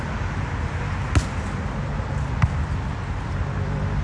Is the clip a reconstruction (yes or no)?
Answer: no